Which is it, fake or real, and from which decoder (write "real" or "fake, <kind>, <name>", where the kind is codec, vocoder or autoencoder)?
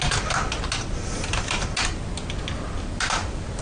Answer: real